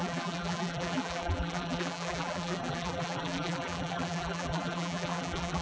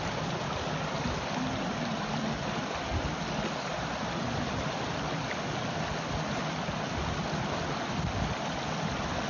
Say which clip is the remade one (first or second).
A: first